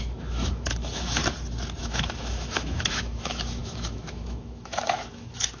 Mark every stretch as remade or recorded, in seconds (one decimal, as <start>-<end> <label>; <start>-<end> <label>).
0.0-1.2 remade; 1.2-1.8 recorded; 1.8-5.6 remade